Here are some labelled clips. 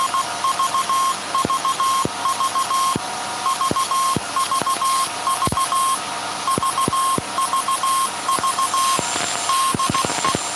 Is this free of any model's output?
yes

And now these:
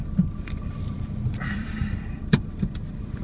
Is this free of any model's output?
no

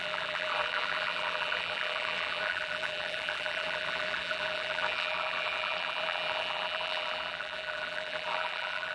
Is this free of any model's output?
no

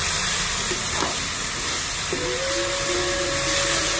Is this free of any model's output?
yes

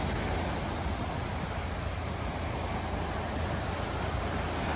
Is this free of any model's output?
yes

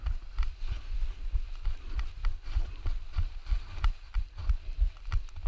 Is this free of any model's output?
no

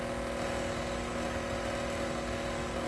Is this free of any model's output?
yes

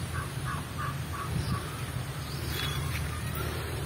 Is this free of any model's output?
no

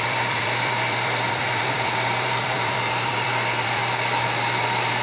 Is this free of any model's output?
no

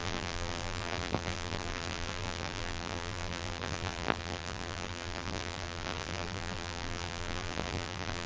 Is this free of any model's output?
no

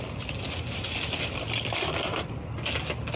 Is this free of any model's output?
yes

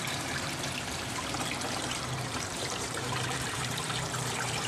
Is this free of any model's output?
no